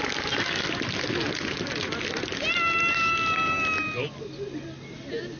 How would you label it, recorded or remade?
recorded